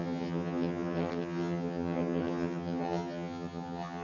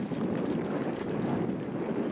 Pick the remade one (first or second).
first